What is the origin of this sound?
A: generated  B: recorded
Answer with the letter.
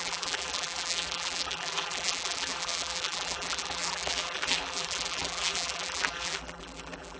A